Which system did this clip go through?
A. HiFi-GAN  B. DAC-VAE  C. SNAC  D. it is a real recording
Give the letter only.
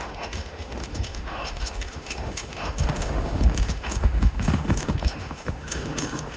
B